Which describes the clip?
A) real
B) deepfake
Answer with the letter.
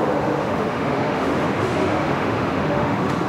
B